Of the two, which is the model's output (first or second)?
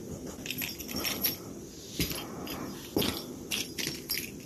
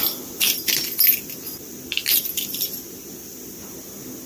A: first